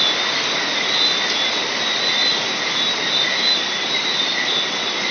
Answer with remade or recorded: recorded